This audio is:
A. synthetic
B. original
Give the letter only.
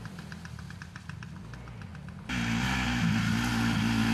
B